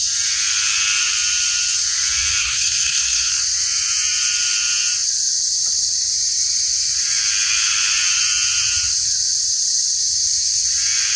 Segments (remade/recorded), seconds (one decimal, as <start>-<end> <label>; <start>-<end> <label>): 0.0-2.4 recorded; 2.4-3.3 remade; 3.3-11.2 recorded